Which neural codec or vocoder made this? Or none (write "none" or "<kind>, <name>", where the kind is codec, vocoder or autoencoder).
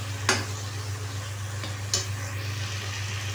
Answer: none